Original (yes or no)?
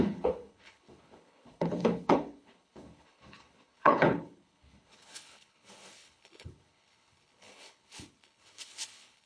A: no